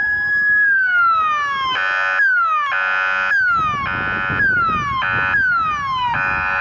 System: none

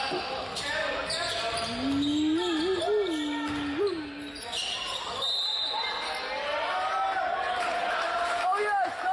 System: none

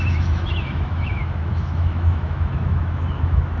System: autoencoder, DAC-VAE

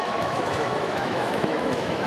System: autoencoder, DAC-VAE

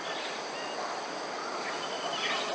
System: none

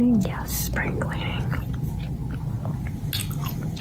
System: none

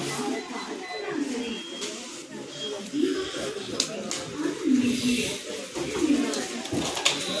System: none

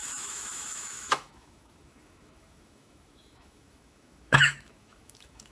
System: autoencoder, DAC-VAE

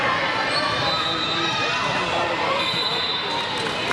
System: none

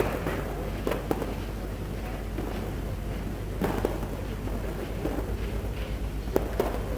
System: none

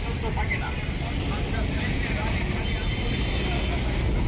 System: none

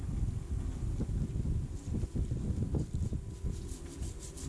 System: none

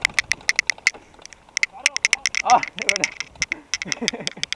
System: none